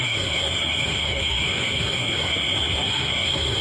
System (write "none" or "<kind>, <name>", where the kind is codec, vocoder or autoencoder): codec, SNAC